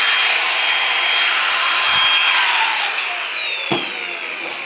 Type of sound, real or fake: real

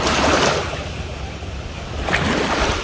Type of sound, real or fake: real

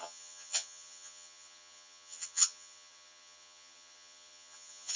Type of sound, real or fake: fake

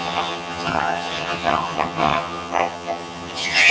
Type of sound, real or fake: fake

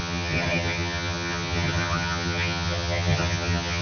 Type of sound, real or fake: fake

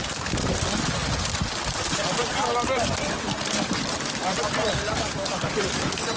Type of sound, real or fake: real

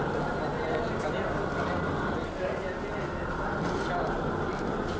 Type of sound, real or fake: real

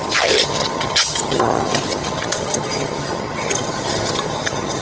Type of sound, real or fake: fake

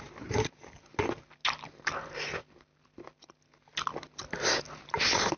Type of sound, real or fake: real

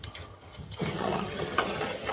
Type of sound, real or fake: fake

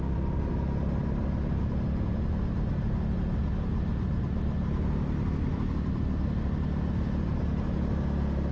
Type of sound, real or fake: real